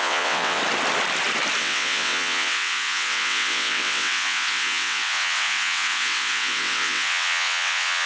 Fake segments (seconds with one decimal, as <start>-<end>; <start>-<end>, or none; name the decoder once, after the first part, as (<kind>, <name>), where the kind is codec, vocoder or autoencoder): 0.0-0.6 (vocoder, WaveNeXt); 1.6-8.1